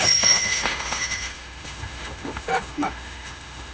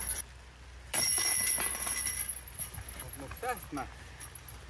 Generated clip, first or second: first